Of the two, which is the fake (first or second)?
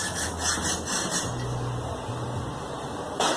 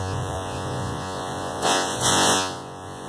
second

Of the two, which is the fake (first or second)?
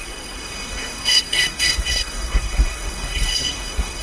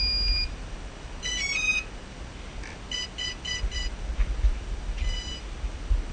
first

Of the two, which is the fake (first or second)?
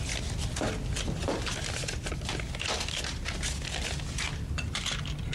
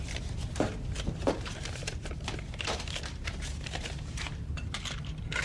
second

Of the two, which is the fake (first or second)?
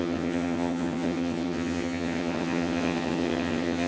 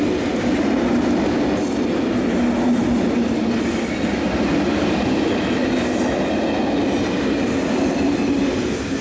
first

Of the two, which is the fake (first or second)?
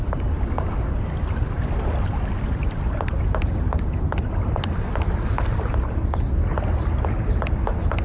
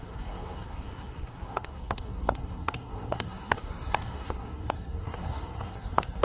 second